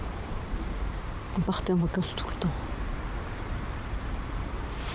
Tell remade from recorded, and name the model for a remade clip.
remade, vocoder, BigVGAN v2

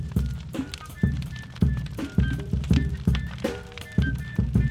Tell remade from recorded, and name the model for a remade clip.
remade, vocoder, BigVGAN v2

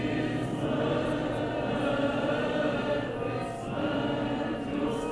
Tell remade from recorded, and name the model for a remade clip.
remade, vocoder, BigVGAN v2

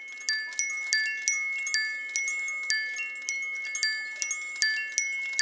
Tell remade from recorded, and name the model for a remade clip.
recorded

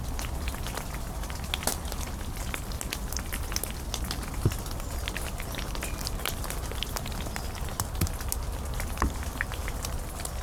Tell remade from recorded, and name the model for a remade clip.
recorded